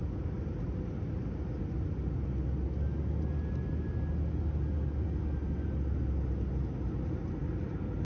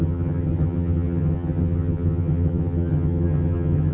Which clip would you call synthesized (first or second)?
second